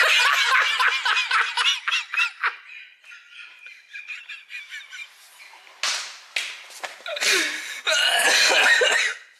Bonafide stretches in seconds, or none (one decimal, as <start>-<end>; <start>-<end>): 0.0-9.4